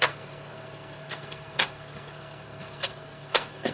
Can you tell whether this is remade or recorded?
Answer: remade